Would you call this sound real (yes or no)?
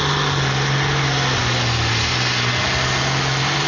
yes